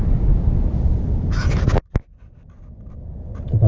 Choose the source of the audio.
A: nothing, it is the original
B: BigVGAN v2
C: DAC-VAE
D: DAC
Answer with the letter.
A